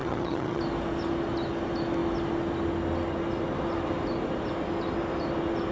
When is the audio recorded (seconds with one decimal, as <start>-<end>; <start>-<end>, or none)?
0.6-5.7